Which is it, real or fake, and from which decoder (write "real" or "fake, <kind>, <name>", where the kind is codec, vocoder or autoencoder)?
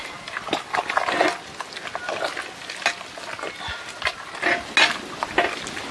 real